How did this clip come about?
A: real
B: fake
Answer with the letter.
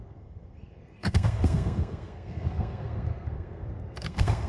B